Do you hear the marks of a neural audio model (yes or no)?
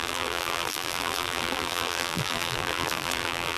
yes